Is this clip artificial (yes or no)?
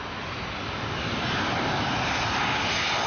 no